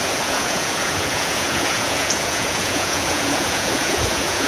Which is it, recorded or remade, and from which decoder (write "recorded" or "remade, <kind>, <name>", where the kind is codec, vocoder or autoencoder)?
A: remade, vocoder, Vocos